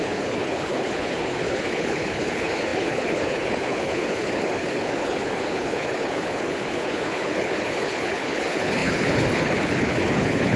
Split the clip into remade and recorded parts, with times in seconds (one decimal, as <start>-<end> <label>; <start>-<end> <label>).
0.0-10.6 remade